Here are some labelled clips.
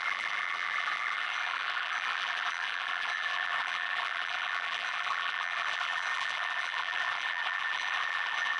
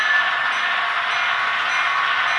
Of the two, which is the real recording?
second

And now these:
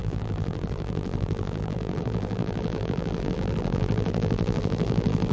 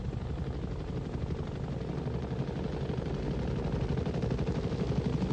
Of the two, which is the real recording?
second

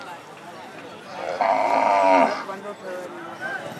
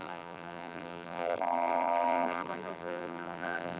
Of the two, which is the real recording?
first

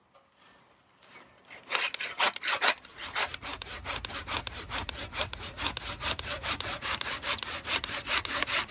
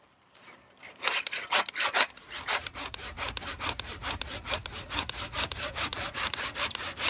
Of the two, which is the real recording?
first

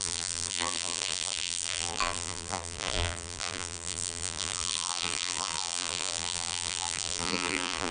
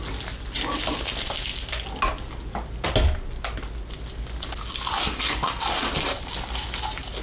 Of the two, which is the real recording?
second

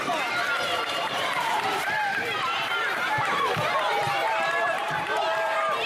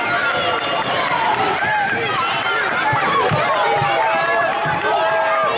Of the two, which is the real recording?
second